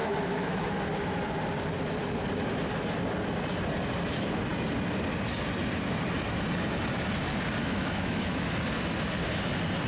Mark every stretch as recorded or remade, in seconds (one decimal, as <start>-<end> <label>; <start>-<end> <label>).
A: 0.0-0.7 remade; 0.7-7.6 recorded; 7.6-8.5 remade; 8.5-9.9 recorded